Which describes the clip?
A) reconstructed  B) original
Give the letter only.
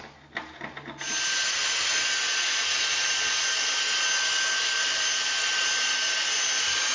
B